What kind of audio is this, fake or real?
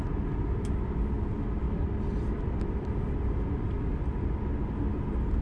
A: real